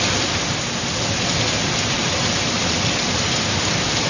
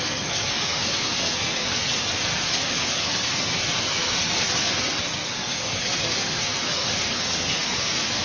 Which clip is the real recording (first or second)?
first